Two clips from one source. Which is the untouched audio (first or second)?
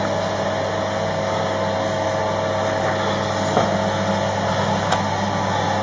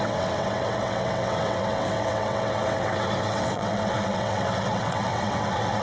first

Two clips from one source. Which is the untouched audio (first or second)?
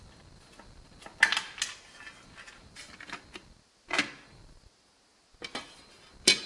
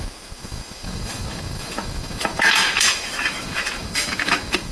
first